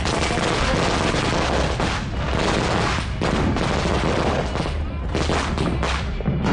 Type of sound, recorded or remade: recorded